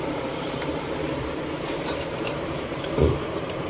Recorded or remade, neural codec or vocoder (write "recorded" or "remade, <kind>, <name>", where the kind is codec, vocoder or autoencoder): remade, vocoder, BigVGAN v2